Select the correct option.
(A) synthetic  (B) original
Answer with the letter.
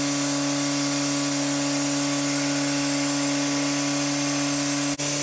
B